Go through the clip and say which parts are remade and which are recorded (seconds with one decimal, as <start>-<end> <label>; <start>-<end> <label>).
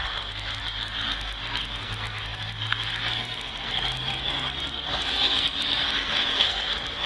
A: 0.0-7.1 remade